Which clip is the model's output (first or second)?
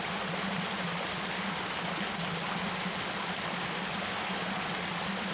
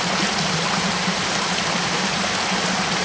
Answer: second